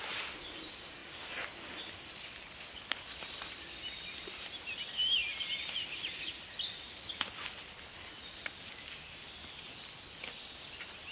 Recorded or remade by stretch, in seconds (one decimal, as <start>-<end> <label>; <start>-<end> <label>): 0.0-11.1 recorded